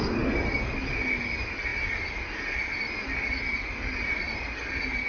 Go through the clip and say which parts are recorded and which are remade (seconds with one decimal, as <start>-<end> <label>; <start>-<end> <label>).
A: 0.0-5.1 recorded